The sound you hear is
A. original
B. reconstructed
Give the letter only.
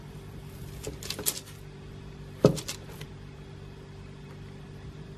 A